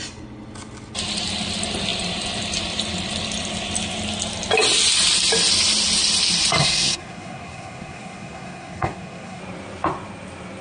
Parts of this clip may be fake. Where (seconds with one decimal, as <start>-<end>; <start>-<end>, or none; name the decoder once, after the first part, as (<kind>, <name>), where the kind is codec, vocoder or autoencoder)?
6.6-9.4 (codec, SNAC)